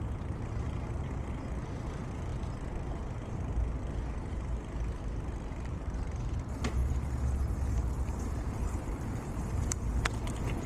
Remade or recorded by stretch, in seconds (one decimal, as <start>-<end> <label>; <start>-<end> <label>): 0.0-2.3 remade; 2.3-2.9 recorded; 2.9-3.5 remade; 3.5-4.3 recorded; 4.3-10.7 remade